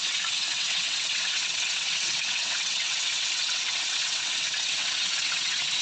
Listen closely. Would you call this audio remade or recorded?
remade